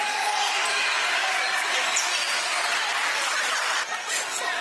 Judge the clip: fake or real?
real